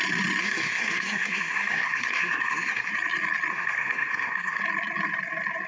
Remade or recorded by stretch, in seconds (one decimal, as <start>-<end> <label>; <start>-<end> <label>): 0.0-0.4 recorded; 0.4-2.9 remade; 2.9-3.5 recorded; 3.5-4.6 remade; 4.6-5.7 recorded